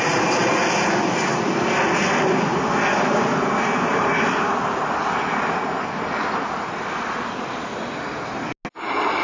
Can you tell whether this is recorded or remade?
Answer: recorded